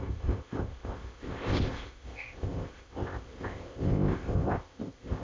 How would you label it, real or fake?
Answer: fake